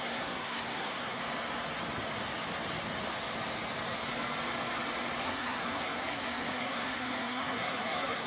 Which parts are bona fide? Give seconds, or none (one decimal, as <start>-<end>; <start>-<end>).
1.2-5.2

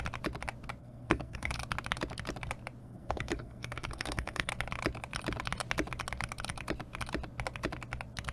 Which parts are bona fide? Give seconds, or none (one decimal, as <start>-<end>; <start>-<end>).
0.0-0.8; 1.5-2.8; 4.5-8.3

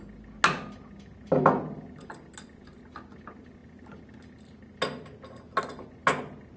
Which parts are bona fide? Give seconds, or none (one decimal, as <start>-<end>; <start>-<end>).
0.0-6.6

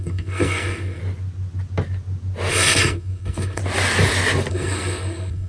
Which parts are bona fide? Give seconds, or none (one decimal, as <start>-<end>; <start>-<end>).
1.0-2.5; 3.6-4.5